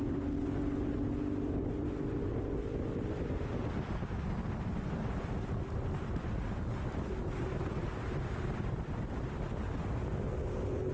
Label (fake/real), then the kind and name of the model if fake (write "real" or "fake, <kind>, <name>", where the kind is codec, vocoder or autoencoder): real